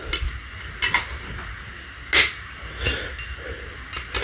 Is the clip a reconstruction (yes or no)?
no